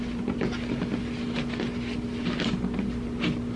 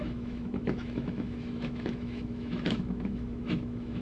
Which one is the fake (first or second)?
second